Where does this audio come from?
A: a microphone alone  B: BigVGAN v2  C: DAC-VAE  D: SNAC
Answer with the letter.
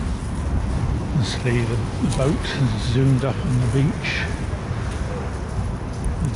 A